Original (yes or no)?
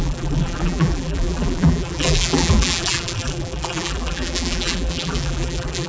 no